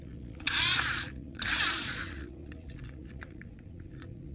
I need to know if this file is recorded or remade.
remade